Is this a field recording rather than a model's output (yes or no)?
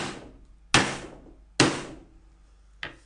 yes